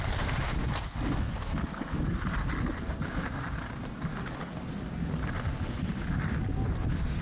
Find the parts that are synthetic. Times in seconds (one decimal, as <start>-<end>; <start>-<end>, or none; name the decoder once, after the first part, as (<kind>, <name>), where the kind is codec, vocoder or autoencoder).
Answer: 1.5-2.0 (codec, DAC); 4.1-4.7